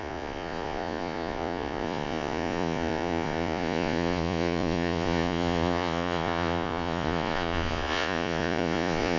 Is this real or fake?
fake